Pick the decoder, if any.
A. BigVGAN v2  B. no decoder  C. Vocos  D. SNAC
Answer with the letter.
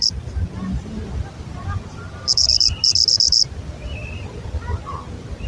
B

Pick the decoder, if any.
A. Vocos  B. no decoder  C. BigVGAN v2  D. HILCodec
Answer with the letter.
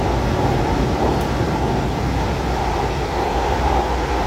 B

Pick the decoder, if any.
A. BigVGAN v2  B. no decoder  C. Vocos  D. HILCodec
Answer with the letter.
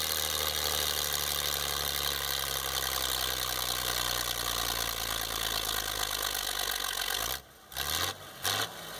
B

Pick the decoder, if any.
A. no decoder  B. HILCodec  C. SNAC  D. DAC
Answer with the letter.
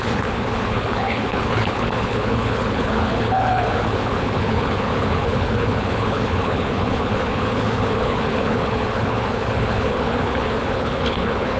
B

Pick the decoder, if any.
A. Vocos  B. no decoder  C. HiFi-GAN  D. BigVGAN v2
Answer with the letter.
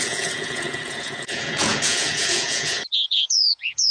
A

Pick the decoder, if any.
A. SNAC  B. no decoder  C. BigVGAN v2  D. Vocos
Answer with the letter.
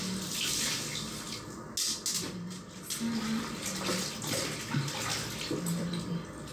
B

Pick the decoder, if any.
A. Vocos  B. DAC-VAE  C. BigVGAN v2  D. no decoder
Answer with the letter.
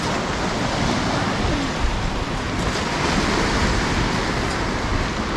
D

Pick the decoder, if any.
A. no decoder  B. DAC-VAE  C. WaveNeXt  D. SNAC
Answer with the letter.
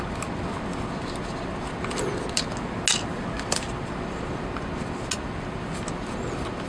A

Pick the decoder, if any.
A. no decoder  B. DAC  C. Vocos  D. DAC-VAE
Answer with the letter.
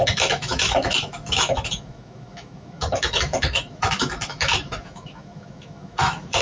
D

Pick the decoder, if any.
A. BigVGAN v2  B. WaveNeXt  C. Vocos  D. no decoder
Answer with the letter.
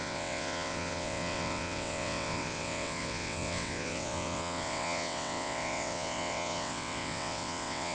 B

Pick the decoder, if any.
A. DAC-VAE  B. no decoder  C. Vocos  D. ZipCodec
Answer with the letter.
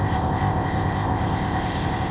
D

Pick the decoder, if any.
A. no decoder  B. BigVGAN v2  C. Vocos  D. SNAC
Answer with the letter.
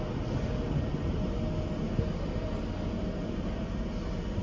A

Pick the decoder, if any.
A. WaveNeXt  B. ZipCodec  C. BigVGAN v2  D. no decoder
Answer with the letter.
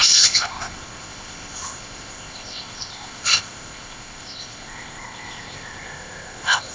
B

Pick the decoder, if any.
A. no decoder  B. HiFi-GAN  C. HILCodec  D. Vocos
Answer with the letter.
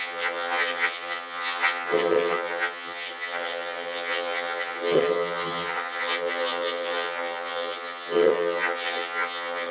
B